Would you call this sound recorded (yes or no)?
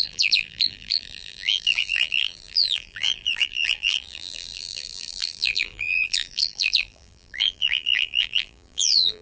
no